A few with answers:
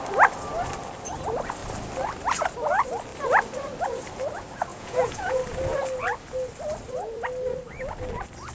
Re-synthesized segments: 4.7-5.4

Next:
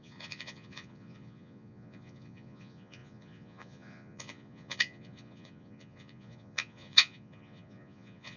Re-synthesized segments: 0.0-8.4

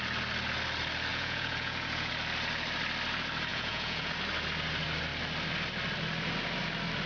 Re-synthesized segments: 1.1-2.1; 3.5-4.1

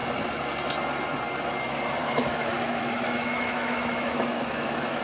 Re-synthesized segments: 2.0-5.0

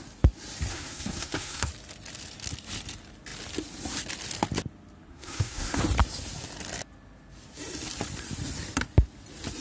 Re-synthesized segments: 0.7-1.7; 5.1-5.8

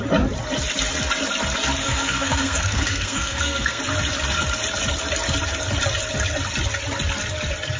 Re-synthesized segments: 1.8-3.8

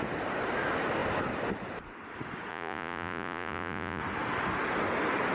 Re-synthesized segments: 2.5-4.0

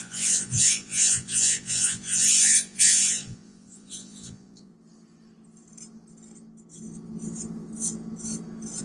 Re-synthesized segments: 0.0-4.7